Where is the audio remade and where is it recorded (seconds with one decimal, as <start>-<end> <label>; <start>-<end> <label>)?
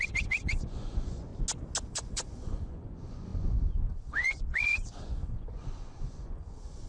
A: 0.0-1.3 remade; 1.3-1.9 recorded; 1.9-6.9 remade